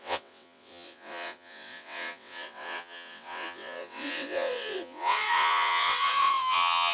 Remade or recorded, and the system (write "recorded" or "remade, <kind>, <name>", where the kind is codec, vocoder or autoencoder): remade, vocoder, WaveNeXt